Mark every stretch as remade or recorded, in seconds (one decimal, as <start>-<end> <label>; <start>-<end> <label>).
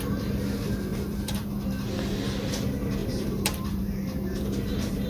0.0-0.9 recorded; 0.9-1.9 remade; 1.9-3.0 recorded; 3.0-5.1 remade